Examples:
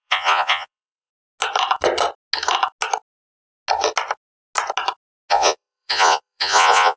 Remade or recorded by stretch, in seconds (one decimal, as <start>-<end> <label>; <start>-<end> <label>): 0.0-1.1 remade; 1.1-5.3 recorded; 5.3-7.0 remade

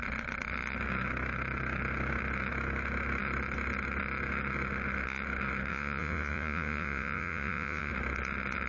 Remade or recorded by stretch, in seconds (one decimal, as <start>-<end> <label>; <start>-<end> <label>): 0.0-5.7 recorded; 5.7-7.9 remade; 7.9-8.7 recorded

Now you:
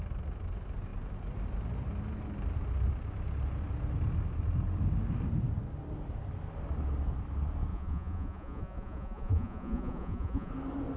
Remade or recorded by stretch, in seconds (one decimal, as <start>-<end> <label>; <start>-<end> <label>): 0.0-7.7 recorded; 7.7-10.5 remade; 10.5-11.0 recorded

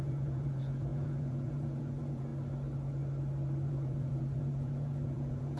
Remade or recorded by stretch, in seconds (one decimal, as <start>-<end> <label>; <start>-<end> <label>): 0.0-2.3 remade; 2.3-3.7 recorded; 3.7-5.6 remade

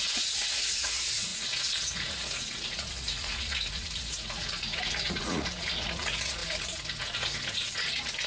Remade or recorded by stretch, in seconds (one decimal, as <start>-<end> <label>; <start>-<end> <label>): 0.0-8.3 remade

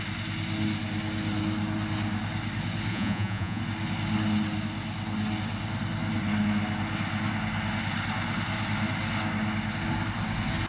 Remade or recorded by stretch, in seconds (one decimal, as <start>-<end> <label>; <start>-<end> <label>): 0.0-2.9 recorded; 2.9-3.6 remade; 3.6-10.7 recorded